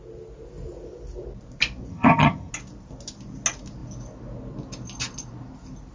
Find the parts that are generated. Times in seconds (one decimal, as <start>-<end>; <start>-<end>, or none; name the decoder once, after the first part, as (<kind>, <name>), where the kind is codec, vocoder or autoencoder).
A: 1.9-2.5 (vocoder, HiFi-GAN)